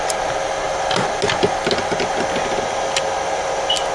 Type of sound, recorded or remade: recorded